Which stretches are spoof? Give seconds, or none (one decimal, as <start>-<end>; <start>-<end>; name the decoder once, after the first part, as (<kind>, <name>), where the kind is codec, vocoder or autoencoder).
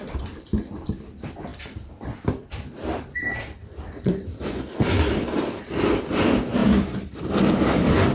1.5-5.6 (vocoder, BigVGAN v2); 6.6-7.5